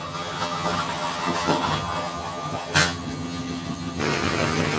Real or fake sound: fake